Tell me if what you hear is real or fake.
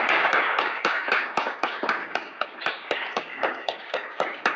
fake